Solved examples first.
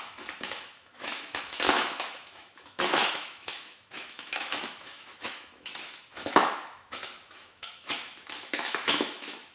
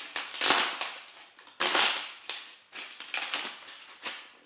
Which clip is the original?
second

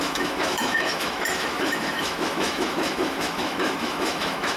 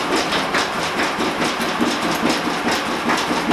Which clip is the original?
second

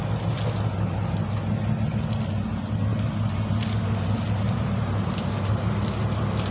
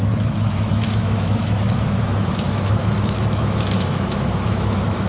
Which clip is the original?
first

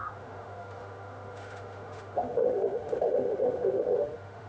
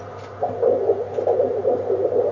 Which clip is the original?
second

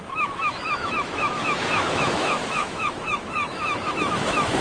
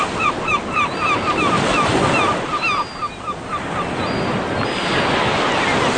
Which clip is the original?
second